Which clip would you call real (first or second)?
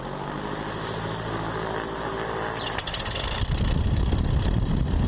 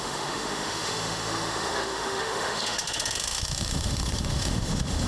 first